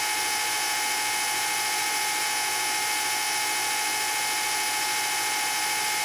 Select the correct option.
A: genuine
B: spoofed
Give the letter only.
A